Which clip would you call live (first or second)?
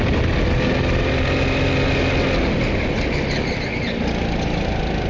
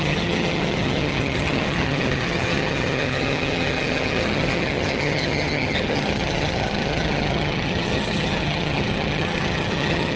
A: first